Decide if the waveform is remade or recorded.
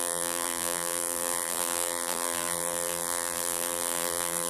remade